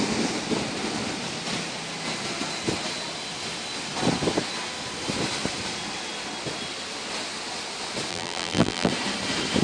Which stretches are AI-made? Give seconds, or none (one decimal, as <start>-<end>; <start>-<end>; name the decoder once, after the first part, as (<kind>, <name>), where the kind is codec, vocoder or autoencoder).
8.1-8.9 (vocoder, BigVGAN v2)